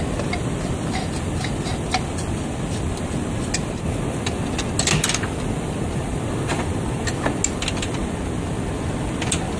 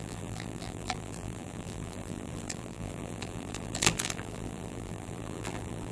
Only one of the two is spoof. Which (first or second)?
second